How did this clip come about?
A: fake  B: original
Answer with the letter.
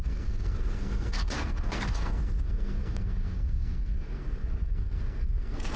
A